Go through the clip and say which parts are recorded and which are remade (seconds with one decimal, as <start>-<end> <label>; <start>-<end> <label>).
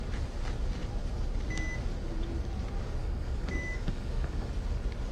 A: 0.0-3.0 recorded; 3.0-4.5 remade; 4.5-5.1 recorded